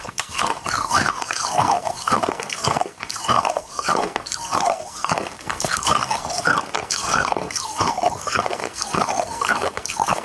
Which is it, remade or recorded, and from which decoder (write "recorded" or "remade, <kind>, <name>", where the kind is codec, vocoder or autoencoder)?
remade, codec, SNAC